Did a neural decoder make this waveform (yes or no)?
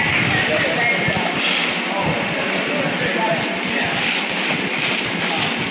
no